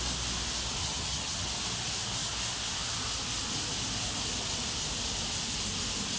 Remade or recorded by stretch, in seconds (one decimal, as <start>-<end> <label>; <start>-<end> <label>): 0.0-0.8 recorded; 0.8-1.5 remade; 1.5-6.2 recorded